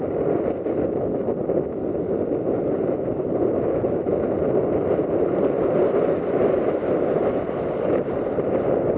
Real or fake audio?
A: real